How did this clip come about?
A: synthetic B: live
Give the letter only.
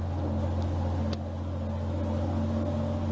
B